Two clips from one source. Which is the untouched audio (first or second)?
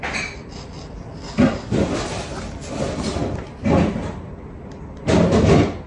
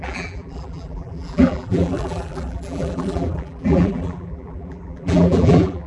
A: first